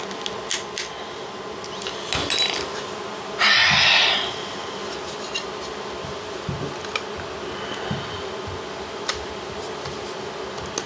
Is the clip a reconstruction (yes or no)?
no